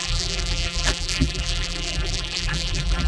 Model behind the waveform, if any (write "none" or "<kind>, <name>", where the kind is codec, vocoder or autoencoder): vocoder, BigVGAN v2